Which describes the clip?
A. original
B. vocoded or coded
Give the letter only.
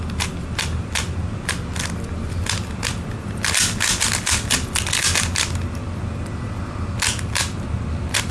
A